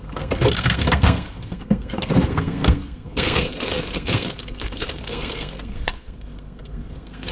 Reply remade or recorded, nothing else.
remade